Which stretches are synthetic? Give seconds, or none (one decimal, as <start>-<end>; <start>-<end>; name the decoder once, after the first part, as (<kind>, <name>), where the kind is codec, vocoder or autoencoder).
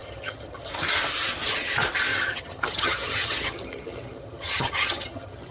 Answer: 0.0-0.7 (vocoder, HiFi-GAN); 2.1-5.5